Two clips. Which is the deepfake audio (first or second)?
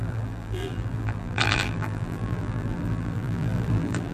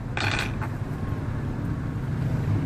first